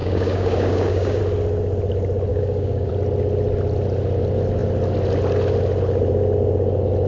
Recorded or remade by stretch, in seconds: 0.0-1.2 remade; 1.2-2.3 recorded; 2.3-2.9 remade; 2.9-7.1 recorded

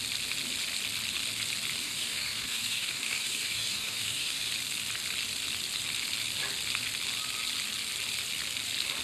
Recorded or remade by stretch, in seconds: 0.0-1.8 recorded; 1.8-4.5 remade; 4.5-9.0 recorded

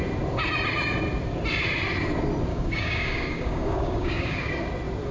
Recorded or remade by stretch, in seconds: 0.0-2.5 recorded; 2.5-4.5 remade; 4.5-5.1 recorded

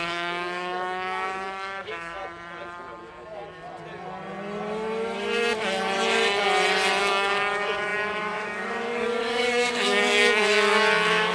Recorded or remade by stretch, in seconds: 0.0-2.2 remade; 2.2-7.0 recorded; 7.0-11.3 remade

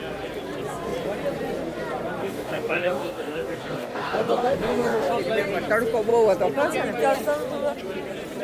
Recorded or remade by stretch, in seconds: 0.0-2.2 recorded; 2.2-5.1 remade; 5.1-8.4 recorded

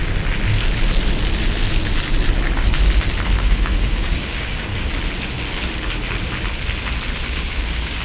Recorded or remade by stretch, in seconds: 0.0-3.4 recorded; 3.4-4.7 remade; 4.7-7.3 recorded; 7.3-8.0 remade

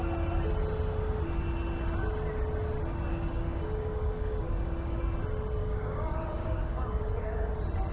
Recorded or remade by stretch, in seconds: 0.0-3.1 recorded; 3.1-5.0 remade; 5.0-5.6 recorded; 5.6-7.5 remade; 7.5-7.9 recorded

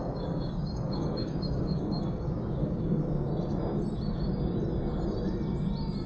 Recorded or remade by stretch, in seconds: 0.0-3.3 remade; 3.3-6.1 recorded